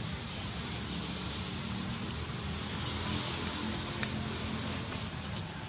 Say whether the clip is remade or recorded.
recorded